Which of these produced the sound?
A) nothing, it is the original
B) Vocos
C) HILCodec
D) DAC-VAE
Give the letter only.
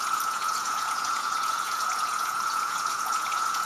B